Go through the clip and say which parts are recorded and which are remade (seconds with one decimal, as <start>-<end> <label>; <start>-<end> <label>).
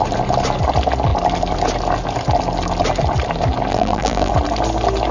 0.0-3.7 recorded; 3.7-4.3 remade; 4.3-5.1 recorded